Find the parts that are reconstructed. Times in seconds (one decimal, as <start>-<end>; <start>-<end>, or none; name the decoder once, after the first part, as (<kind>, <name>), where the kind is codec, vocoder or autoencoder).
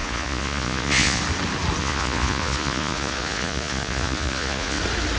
0.0-1.2 (vocoder, Vocos); 1.8-4.8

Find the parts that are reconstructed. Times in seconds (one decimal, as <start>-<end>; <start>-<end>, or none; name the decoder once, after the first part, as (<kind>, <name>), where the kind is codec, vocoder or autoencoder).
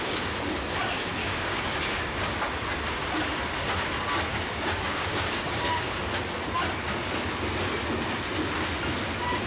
1.2-2.0 (codec, DAC); 4.3-6.0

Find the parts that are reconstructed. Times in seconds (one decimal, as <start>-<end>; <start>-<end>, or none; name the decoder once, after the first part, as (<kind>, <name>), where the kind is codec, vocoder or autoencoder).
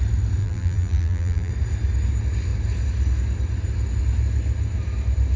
0.4-1.5 (vocoder, BigVGAN v2)